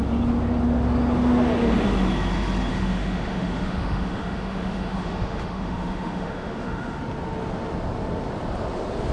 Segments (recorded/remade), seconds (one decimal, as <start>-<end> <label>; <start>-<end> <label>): 0.0-2.7 recorded; 2.7-7.0 remade; 7.0-9.1 recorded